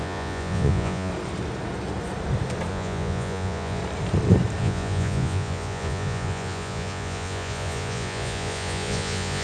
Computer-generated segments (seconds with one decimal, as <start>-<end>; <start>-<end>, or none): 0.0-1.1; 2.7-3.8; 4.6-9.4